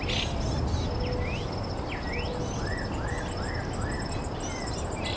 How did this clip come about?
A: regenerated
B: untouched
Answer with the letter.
B